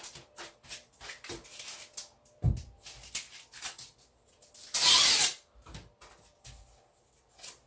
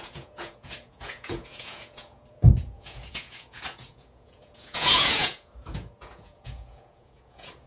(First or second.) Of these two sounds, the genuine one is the first